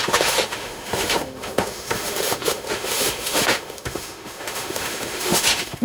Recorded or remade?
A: remade